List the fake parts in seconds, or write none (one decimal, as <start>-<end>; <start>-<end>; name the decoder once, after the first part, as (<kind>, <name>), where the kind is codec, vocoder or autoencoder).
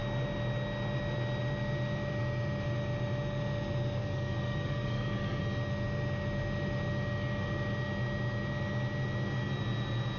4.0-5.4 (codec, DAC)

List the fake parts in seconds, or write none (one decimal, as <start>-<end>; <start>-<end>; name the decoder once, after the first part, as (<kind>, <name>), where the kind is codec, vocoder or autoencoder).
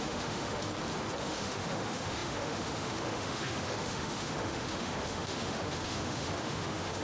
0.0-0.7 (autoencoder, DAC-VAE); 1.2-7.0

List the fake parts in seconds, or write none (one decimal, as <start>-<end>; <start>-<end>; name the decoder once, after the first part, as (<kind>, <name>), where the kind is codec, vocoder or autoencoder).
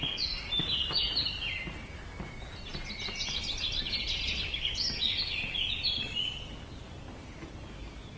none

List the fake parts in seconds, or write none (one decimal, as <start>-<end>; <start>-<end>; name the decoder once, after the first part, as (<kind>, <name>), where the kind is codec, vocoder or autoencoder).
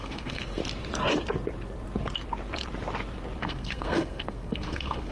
0.0-0.6 (codec, SNAC); 3.4-5.1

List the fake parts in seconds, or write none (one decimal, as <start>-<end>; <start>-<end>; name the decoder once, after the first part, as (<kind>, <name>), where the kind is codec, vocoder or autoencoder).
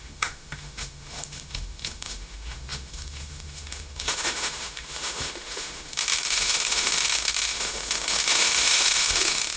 0.0-9.6 (autoencoder, DAC-VAE)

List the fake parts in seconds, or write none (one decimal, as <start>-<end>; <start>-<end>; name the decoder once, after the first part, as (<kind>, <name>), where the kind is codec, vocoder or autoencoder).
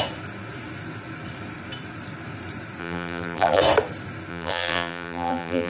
2.8-3.6 (vocoder, BigVGAN v2); 4.3-5.7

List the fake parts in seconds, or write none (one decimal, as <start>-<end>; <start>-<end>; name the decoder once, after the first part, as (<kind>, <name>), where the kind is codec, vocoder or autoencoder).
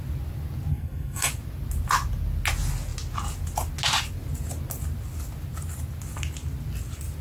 0.7-1.3 (codec, SNAC)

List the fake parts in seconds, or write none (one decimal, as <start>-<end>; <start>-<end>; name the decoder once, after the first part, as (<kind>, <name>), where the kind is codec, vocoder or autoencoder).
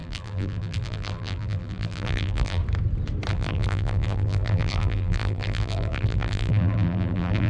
0.0-2.6 (vocoder, BigVGAN v2); 3.3-7.5